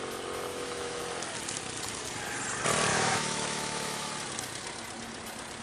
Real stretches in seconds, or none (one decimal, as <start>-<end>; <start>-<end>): 0.0-0.5; 1.0-2.9; 4.1-5.6